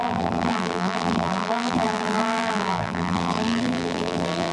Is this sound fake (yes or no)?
yes